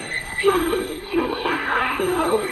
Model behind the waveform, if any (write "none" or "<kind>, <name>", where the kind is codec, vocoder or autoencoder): codec, SNAC